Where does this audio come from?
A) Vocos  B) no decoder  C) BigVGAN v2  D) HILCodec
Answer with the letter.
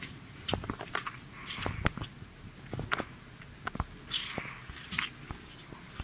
B